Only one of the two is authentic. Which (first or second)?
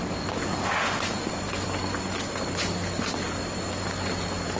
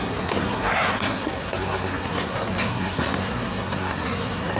first